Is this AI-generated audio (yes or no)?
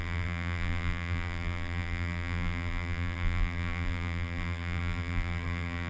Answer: yes